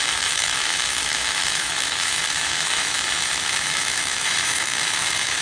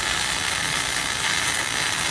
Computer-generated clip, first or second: first